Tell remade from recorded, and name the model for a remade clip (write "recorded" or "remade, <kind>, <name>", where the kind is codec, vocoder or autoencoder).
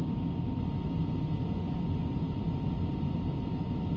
recorded